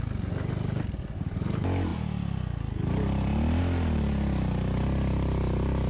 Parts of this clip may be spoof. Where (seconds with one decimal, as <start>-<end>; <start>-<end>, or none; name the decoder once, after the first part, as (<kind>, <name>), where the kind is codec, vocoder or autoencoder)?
none